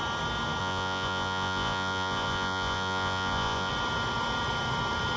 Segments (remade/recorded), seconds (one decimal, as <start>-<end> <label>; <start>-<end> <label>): 0.0-0.6 recorded; 0.6-3.7 remade; 3.7-5.2 recorded